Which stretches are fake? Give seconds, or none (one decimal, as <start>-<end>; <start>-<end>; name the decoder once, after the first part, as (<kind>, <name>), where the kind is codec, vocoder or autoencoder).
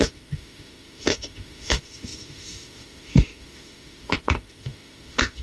0.0-5.4 (autoencoder, DAC-VAE)